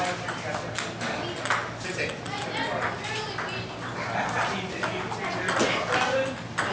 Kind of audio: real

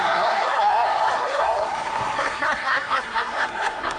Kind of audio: fake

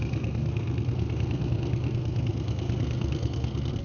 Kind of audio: fake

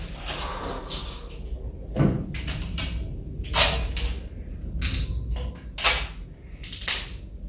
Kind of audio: real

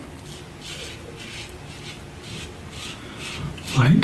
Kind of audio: real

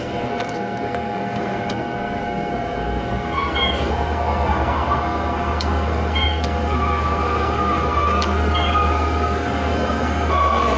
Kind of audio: fake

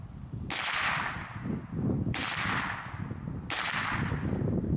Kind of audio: real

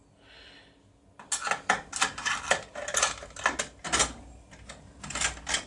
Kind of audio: real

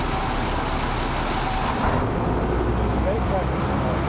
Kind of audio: real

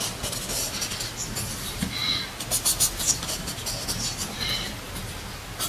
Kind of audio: real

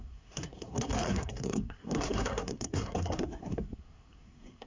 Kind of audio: fake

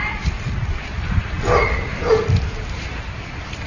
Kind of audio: real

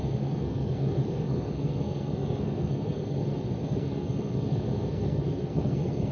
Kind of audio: fake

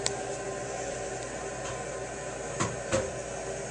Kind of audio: real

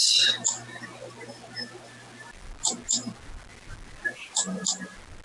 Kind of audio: real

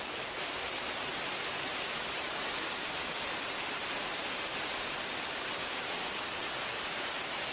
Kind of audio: real